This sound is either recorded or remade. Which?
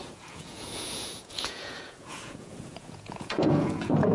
remade